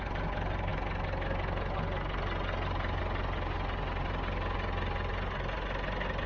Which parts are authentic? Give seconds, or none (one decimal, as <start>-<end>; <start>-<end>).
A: 0.0-6.3